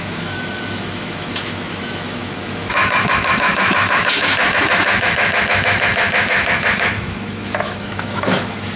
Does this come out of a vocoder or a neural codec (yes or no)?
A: yes